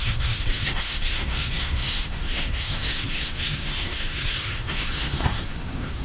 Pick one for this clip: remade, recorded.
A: remade